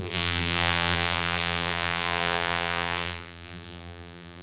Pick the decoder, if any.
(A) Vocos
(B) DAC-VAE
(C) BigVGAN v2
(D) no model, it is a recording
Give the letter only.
C